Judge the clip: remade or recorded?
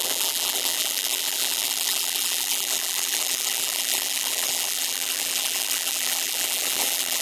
remade